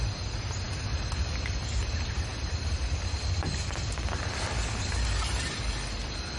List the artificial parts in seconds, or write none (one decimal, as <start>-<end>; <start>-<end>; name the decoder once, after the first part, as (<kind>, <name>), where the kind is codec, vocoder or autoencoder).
none